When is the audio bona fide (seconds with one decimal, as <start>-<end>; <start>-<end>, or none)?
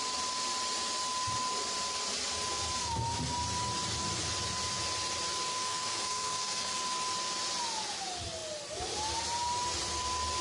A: 0.0-5.5; 6.8-10.4